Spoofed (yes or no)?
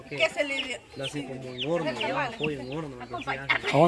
no